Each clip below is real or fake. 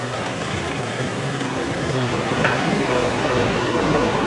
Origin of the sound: fake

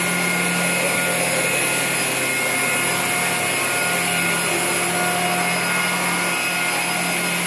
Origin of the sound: real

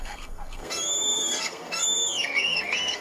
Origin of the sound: fake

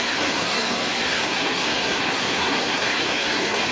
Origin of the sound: fake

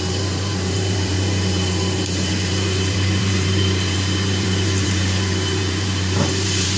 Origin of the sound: fake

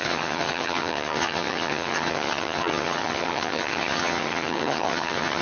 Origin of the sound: fake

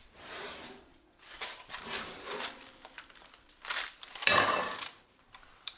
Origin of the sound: fake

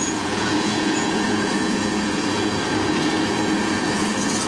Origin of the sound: fake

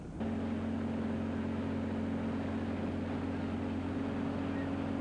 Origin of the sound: real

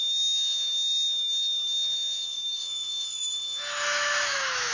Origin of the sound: fake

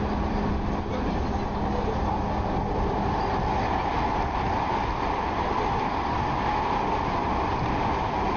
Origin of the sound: real